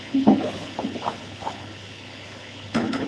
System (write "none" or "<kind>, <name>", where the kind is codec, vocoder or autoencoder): codec, HILCodec